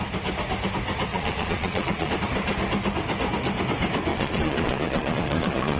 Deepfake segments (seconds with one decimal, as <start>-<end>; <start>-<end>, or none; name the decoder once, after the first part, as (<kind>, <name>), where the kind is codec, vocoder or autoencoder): 1.1-2.1 (vocoder, Vocos); 4.1-5.8